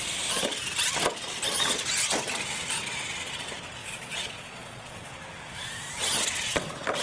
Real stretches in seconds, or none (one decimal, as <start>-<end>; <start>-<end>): 0.0-3.8; 5.1-7.0